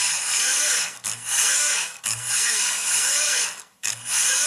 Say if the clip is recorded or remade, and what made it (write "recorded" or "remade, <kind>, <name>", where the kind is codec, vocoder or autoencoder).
remade, codec, SNAC